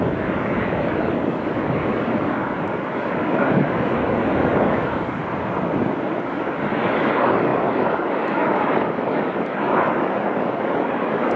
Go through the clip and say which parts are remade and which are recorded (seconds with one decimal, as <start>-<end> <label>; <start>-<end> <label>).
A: 0.0-5.2 remade; 5.2-6.2 recorded; 6.2-11.4 remade